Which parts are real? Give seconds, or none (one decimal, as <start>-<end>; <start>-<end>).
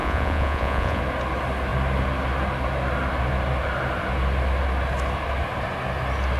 1.0-6.4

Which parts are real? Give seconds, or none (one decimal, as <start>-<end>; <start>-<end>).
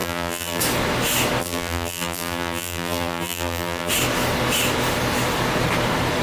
0.6-1.4; 3.9-6.2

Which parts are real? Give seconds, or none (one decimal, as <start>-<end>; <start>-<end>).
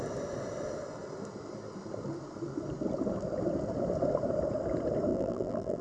0.0-5.1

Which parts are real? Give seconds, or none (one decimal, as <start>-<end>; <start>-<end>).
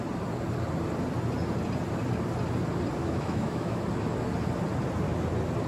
0.0-3.0; 3.8-5.7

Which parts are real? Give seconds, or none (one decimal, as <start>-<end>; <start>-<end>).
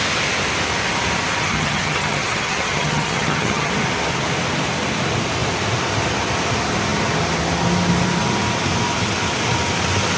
0.0-1.4; 3.7-10.2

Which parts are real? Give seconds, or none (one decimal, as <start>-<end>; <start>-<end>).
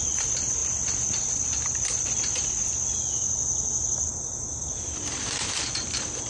0.0-0.6; 2.5-6.3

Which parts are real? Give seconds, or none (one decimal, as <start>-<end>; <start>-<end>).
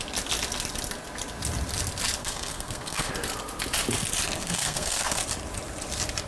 0.0-2.2; 3.1-4.4; 5.2-6.3